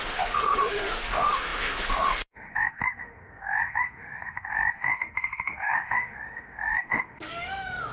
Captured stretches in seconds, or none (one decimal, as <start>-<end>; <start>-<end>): none